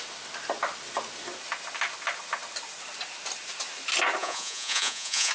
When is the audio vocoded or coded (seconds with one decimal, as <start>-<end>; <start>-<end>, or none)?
4.2-5.3